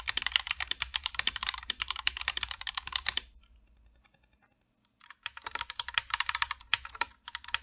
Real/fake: fake